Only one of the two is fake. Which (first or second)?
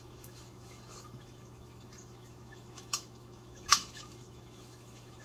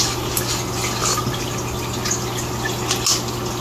first